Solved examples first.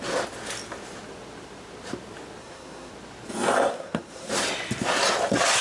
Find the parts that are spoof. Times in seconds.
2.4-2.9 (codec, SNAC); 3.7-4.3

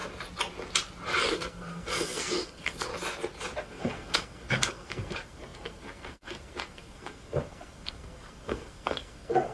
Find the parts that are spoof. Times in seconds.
1.3-2.9 (codec, SNAC); 3.6-9.5

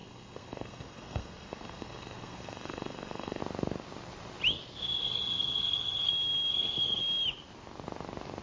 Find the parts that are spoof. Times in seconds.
0.0-3.4 (codec, SNAC); 5.0-6.1; 6.5-7.0

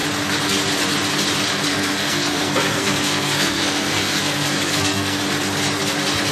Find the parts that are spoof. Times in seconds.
1.7-5.2 (codec, SNAC)

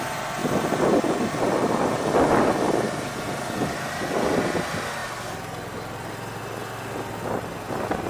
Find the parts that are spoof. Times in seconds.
none

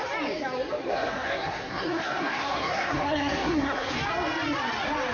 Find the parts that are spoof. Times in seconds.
0.8-3.9 (codec, SNAC)